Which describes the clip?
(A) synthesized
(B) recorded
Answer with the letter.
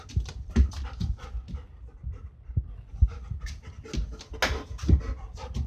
B